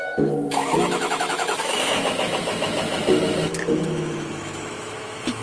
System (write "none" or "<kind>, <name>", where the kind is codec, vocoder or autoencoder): autoencoder, DAC-VAE